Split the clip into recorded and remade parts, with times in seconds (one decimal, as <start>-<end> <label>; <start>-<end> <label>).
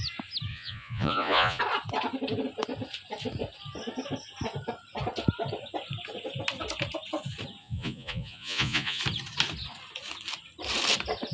0.0-0.5 recorded; 0.5-1.6 remade; 1.6-7.6 recorded; 7.6-9.0 remade; 9.0-11.3 recorded